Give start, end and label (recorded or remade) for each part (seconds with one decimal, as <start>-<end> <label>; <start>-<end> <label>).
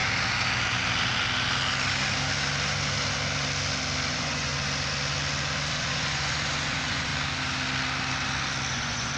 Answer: 0.0-4.1 recorded; 4.1-4.5 remade; 4.5-5.7 recorded; 5.7-7.1 remade; 7.1-8.7 recorded; 8.7-9.2 remade